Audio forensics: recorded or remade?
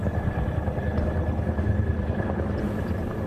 recorded